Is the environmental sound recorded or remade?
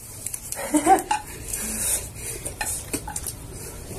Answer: remade